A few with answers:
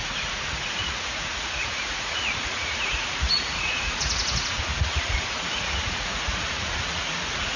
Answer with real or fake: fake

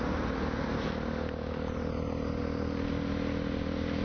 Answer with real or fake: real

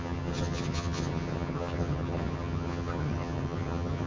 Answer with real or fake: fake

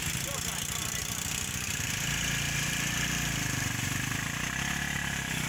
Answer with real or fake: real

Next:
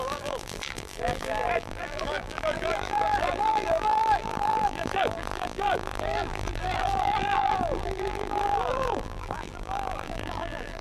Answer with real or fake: fake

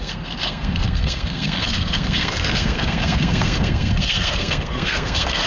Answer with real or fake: fake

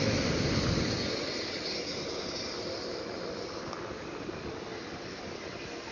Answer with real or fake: real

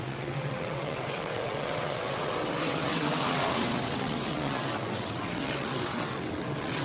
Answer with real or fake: fake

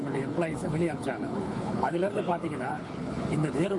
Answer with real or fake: fake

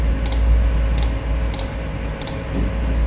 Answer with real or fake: real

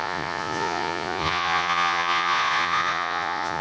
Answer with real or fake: fake